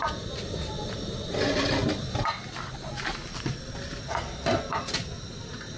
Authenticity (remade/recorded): recorded